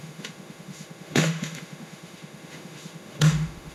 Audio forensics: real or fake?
fake